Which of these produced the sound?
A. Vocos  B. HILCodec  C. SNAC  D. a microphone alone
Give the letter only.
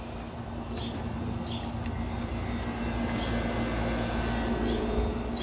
D